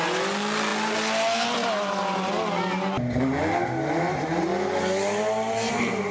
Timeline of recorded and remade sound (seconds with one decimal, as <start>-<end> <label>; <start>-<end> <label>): 0.0-6.1 recorded